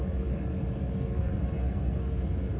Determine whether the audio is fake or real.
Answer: fake